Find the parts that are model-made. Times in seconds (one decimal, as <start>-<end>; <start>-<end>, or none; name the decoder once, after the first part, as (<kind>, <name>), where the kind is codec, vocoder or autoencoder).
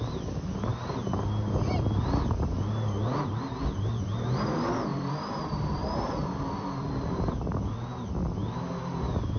4.9-7.3 (vocoder, BigVGAN v2)